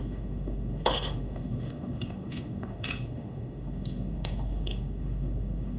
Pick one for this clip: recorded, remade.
remade